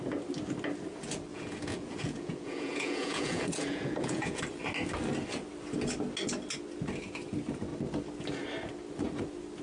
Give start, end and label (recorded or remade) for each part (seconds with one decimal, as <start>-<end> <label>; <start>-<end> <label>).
0.0-1.3 recorded; 1.3-4.4 remade; 4.4-9.6 recorded